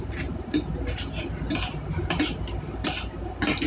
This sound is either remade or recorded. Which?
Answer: recorded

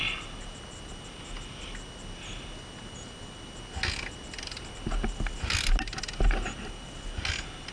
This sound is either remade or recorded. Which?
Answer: recorded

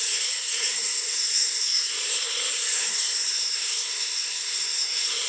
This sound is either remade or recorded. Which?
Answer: remade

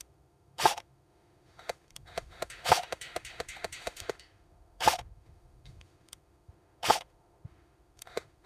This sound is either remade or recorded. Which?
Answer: remade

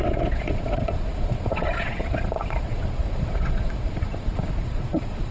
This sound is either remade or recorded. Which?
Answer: remade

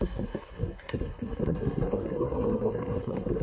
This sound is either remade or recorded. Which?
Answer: remade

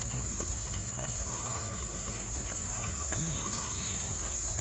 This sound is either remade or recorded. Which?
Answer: remade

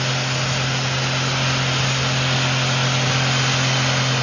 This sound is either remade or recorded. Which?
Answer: recorded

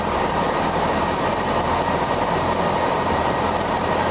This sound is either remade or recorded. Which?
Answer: remade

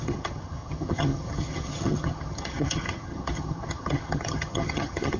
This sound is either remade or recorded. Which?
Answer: remade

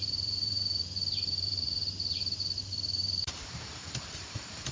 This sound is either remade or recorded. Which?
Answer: remade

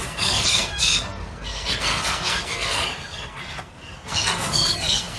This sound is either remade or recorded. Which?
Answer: remade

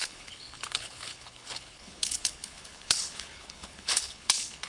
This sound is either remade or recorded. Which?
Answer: remade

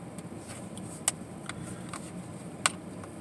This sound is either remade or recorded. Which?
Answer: recorded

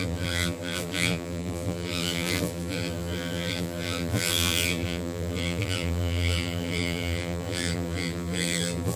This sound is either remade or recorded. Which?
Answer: remade